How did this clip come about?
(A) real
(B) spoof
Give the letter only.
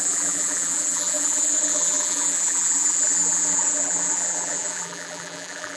B